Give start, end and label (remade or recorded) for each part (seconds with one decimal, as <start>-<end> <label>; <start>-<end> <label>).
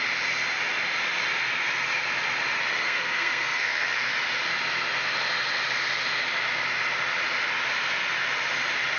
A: 0.0-2.8 recorded; 2.8-4.1 remade; 4.1-9.0 recorded